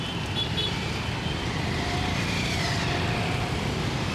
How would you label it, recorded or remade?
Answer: recorded